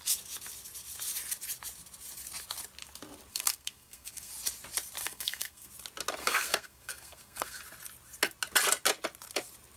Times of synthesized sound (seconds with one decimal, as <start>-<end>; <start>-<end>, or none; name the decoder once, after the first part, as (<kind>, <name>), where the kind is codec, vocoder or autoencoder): 3.3-4.3 (codec, SNAC); 5.0-5.7; 6.2-7.6